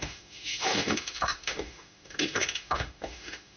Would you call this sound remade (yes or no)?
yes